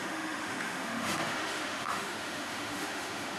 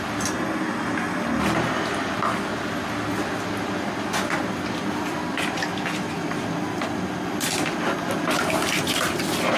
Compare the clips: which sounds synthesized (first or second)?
first